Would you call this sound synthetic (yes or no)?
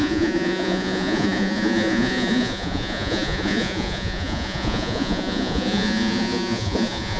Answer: yes